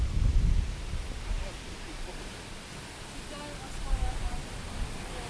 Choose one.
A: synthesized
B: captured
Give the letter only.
B